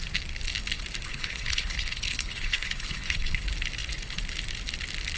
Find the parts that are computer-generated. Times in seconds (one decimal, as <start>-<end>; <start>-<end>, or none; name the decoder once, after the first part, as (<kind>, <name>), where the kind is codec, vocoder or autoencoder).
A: 1.1-3.4 (codec, HILCodec)